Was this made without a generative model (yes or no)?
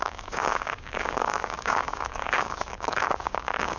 no